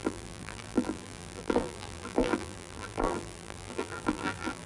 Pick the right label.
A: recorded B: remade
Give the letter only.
B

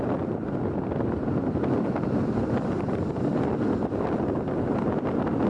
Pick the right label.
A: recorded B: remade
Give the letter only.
A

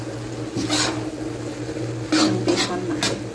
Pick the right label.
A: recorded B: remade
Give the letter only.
A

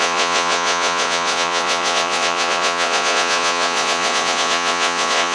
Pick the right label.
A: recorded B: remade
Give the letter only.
B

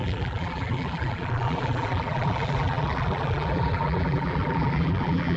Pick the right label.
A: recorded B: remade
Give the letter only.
B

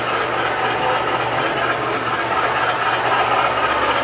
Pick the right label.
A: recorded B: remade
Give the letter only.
A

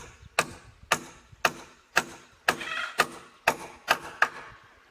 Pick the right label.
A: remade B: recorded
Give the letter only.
B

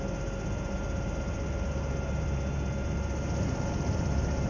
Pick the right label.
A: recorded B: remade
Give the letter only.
A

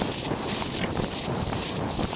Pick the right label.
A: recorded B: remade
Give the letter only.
A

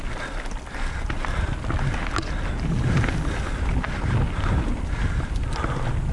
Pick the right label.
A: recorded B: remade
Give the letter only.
A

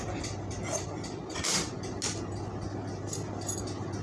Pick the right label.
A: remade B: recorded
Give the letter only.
B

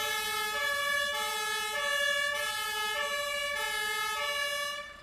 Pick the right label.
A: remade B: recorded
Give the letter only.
B